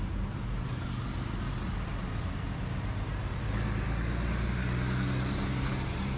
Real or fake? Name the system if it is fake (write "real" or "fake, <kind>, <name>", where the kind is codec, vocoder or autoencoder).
real